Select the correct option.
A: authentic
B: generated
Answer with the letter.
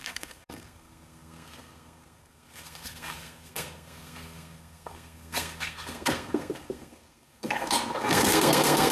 B